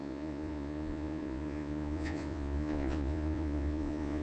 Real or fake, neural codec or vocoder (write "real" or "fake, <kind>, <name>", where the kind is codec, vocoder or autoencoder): fake, vocoder, Vocos